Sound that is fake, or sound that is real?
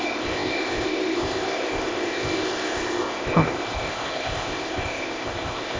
fake